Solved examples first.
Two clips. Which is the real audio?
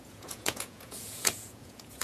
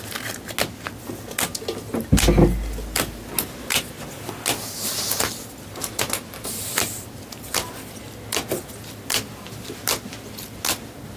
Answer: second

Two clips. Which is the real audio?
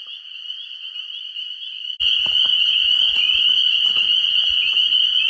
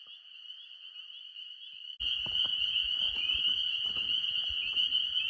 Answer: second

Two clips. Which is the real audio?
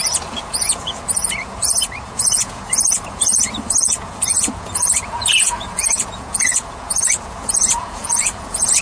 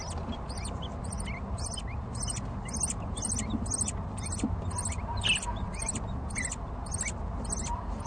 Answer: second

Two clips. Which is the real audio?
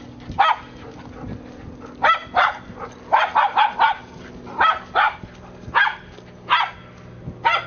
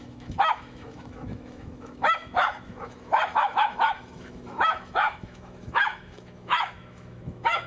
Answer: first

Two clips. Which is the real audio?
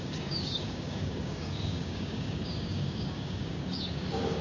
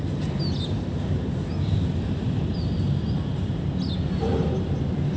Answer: second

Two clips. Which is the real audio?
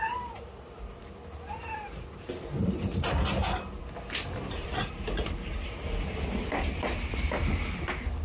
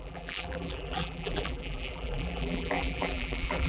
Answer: first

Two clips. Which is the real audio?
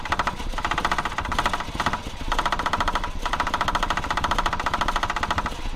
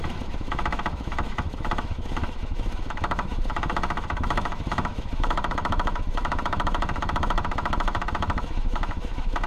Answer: first